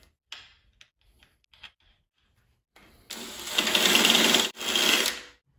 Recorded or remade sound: recorded